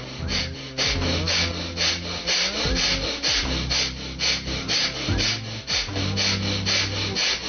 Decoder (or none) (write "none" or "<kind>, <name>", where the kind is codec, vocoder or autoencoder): none